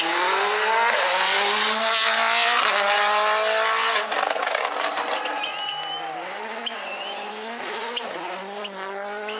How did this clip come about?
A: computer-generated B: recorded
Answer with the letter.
B